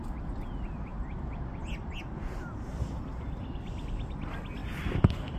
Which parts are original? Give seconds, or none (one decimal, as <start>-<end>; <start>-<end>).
0.0-5.4